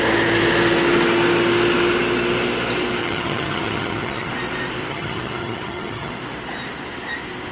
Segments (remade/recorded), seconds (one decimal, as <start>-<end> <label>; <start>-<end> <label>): 0.0-3.0 recorded; 3.0-4.3 remade; 4.3-4.9 recorded; 4.9-6.1 remade; 6.1-7.5 recorded